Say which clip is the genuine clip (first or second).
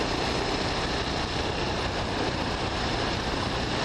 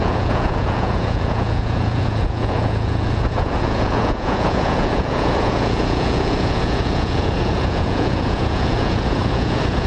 first